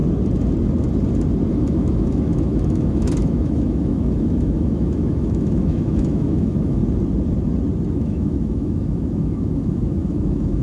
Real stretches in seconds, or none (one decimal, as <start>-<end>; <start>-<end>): 0.0-1.5; 6.8-7.9